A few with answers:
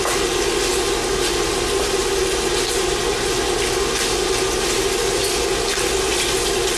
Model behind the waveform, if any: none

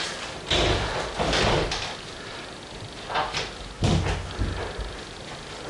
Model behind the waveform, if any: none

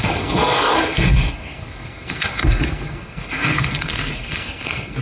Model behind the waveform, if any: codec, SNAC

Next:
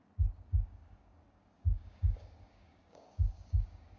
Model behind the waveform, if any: codec, DAC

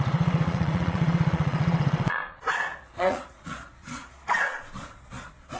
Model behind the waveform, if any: vocoder, Vocos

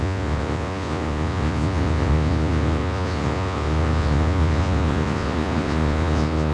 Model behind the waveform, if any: vocoder, Vocos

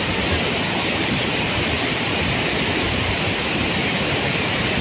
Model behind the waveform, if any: none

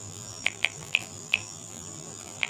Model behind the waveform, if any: vocoder, BigVGAN v2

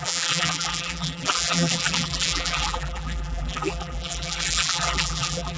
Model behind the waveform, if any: vocoder, BigVGAN v2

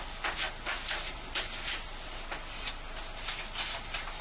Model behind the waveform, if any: none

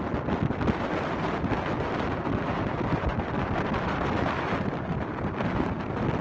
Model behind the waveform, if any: none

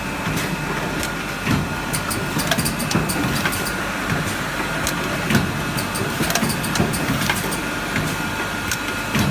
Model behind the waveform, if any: none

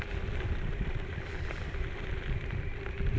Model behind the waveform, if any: none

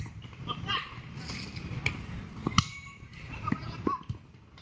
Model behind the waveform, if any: vocoder, BigVGAN v2